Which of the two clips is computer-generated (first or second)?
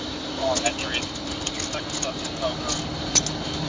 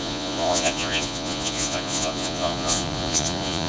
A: second